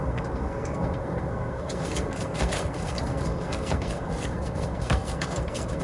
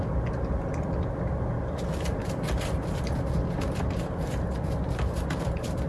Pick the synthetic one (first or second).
first